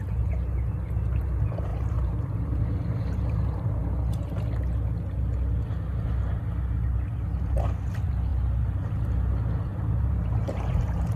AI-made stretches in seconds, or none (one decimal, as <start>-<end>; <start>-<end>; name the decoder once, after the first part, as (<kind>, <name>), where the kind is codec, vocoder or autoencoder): 1.7-3.9 (vocoder, BigVGAN v2); 9.7-10.7